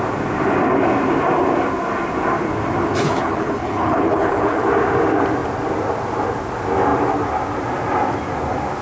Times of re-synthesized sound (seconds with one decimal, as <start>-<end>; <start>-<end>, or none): 2.9-4.6